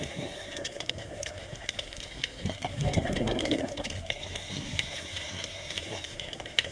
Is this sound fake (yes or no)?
yes